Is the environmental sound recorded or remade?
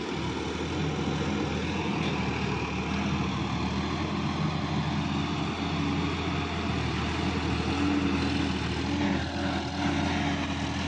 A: recorded